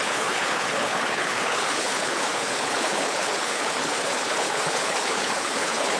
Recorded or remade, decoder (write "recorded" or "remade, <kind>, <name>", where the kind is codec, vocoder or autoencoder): remade, codec, HILCodec